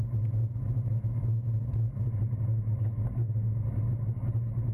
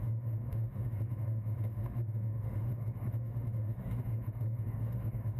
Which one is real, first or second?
first